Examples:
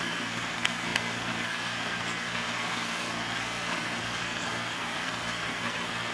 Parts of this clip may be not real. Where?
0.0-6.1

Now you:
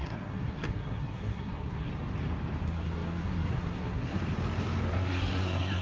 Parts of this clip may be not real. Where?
0.0-1.9; 2.6-4.2; 4.9-5.8

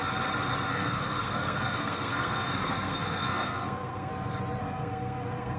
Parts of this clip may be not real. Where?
0.7-4.1; 4.6-5.6

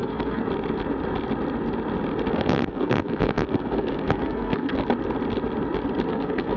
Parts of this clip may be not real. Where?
0.0-0.4; 2.3-4.7; 6.1-6.6

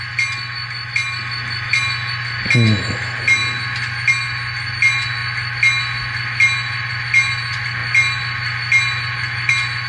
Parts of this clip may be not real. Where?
none

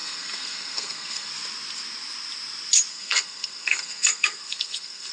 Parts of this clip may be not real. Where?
0.0-1.3; 2.9-5.1

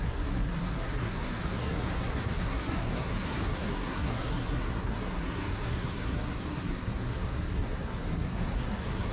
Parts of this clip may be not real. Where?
0.0-9.1